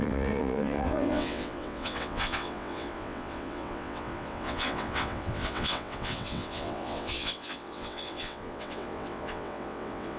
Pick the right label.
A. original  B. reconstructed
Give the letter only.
B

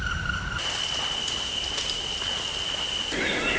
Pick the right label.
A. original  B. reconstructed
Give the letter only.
A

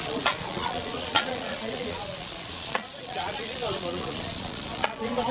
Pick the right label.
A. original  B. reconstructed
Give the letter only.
B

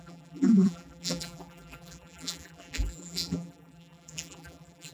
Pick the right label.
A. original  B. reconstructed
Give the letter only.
B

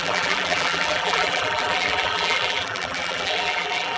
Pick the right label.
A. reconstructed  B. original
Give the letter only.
A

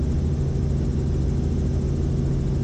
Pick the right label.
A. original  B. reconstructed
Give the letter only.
A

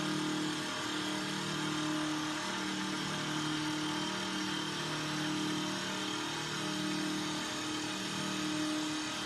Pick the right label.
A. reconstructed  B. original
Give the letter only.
B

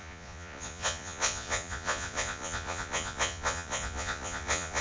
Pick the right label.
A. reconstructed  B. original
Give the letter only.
A